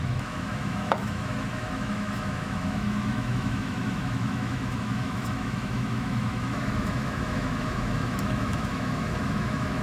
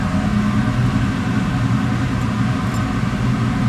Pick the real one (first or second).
second